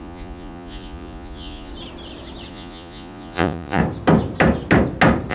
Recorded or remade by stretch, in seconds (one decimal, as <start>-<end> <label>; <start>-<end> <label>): 0.0-1.7 remade; 1.7-2.5 recorded; 2.5-3.8 remade; 3.8-5.3 recorded